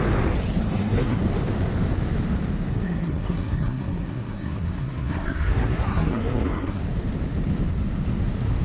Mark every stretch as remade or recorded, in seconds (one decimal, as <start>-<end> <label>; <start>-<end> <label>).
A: 0.0-0.6 recorded; 0.6-1.2 remade; 1.2-2.7 recorded; 2.7-6.8 remade; 6.8-8.6 recorded